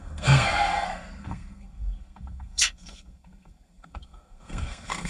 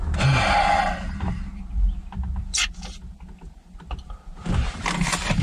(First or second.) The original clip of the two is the second